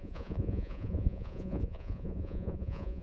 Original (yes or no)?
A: no